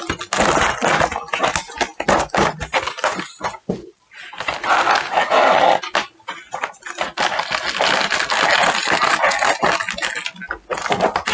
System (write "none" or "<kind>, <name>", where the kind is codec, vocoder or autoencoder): none